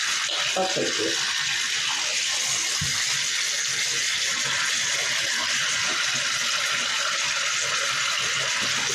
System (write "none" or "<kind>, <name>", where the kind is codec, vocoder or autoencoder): none